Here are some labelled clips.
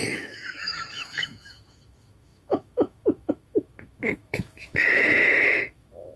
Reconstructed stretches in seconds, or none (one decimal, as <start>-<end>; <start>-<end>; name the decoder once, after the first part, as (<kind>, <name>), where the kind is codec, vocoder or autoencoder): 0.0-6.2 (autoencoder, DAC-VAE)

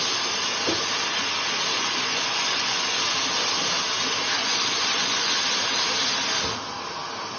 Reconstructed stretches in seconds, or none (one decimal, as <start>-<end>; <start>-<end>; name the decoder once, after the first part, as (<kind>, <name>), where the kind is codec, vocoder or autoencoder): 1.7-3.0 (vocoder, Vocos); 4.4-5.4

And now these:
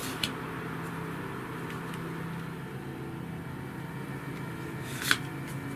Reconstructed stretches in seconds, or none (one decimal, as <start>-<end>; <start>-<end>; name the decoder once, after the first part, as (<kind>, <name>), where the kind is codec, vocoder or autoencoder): none

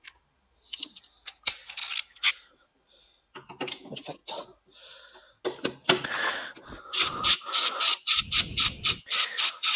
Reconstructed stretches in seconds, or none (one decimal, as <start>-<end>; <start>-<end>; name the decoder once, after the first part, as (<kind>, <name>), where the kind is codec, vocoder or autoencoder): none

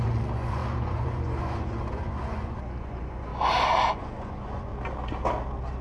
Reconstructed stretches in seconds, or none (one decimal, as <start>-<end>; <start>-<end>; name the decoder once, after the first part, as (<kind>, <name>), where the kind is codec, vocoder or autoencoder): 0.0-3.3 (vocoder, Vocos); 3.9-4.7

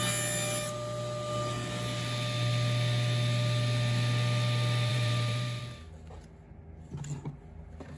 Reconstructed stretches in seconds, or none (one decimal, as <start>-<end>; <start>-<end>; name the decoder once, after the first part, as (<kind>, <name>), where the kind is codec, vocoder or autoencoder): 4.9-5.6 (vocoder, BigVGAN v2)

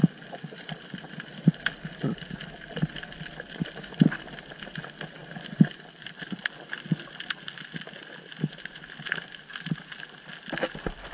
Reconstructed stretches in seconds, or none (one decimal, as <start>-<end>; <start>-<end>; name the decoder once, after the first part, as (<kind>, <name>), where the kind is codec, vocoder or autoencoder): none